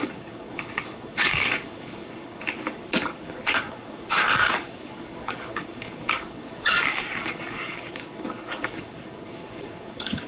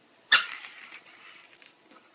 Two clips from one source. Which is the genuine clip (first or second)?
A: second